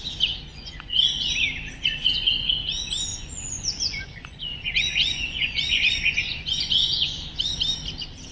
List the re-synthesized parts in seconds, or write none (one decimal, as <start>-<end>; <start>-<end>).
0.5-1.3; 2.0-2.5; 3.1-7.6